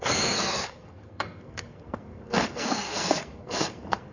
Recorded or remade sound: remade